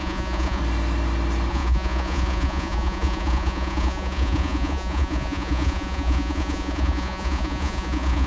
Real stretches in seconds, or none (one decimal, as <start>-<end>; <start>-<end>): 0.6-1.5